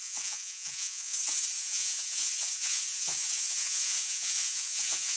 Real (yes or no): no